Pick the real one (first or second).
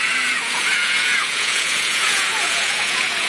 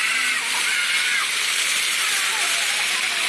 second